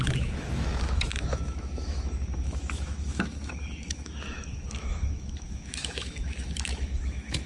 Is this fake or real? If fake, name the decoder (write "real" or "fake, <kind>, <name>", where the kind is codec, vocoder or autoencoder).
fake, autoencoder, DAC-VAE